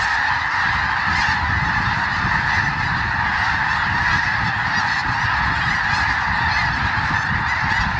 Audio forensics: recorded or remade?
recorded